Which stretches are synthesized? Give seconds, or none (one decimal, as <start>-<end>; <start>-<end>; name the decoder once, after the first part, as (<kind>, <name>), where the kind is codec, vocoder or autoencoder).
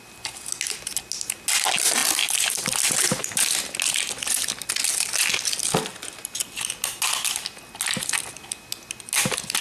none